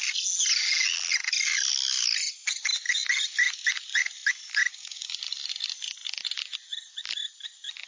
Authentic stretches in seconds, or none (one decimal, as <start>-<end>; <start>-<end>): 0.0-4.7; 5.2-7.9